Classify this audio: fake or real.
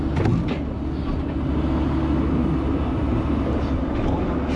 real